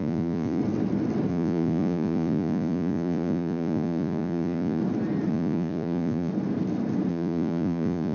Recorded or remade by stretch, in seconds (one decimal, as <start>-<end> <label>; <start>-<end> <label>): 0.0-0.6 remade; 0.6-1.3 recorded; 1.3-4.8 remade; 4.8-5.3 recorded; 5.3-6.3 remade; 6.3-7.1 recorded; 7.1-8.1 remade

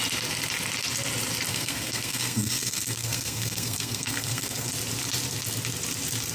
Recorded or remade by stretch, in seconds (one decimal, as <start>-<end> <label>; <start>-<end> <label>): 0.0-1.5 recorded; 1.5-4.7 remade; 4.7-6.3 recorded

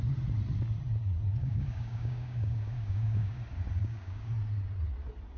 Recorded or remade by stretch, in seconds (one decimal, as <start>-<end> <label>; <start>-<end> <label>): 0.0-1.4 recorded; 1.4-3.4 remade; 3.4-3.8 recorded; 3.8-4.3 remade; 4.3-5.4 recorded

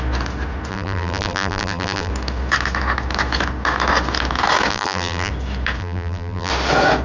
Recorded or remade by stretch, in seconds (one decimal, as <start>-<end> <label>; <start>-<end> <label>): 0.0-0.7 recorded; 0.7-2.1 remade; 2.1-4.7 recorded; 4.7-5.3 remade; 5.3-5.8 recorded; 5.8-6.5 remade; 6.5-7.0 recorded

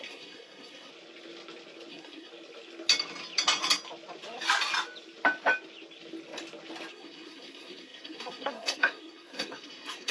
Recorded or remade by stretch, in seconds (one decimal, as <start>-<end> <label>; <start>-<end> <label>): 0.0-0.9 remade; 0.9-1.9 recorded; 1.9-2.3 remade; 2.3-6.9 recorded; 6.9-10.1 remade